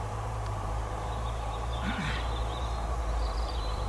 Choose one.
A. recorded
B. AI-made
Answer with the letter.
B